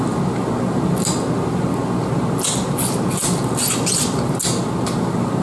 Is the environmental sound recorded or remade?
recorded